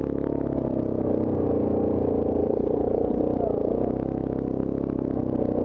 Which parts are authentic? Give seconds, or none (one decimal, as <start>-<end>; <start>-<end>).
0.0-2.4; 3.2-5.6